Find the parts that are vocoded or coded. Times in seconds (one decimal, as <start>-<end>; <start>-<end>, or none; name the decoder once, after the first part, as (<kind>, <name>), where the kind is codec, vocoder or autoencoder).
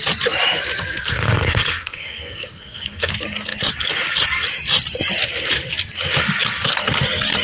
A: 1.0-3.1 (codec, SNAC)